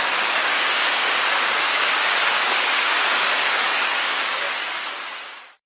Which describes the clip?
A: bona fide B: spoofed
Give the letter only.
B